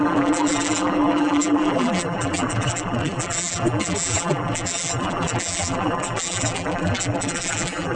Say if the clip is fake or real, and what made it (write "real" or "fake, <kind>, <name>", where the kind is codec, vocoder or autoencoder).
fake, vocoder, BigVGAN v2